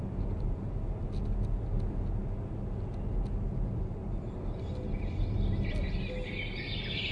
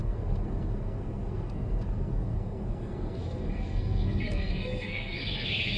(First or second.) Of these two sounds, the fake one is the second